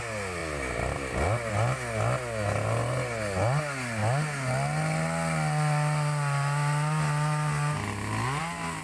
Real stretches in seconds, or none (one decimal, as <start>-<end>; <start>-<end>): 0.0-8.8